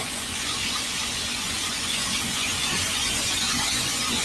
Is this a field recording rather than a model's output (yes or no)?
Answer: no